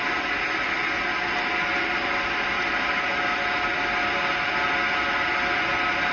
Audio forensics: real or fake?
real